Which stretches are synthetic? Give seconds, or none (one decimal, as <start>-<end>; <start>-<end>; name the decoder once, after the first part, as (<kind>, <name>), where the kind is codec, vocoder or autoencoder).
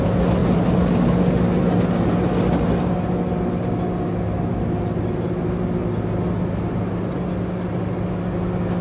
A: none